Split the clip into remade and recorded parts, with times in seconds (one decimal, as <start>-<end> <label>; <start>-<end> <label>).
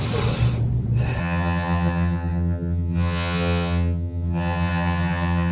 0.0-1.2 recorded; 1.2-5.5 remade